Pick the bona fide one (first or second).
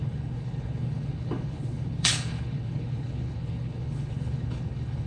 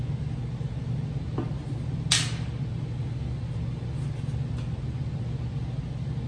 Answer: second